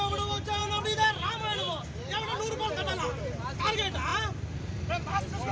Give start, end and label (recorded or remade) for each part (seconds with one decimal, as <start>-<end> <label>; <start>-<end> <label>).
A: 0.0-5.5 recorded